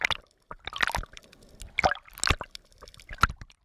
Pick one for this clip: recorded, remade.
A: recorded